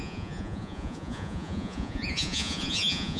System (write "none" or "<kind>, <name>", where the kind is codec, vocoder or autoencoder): vocoder, Vocos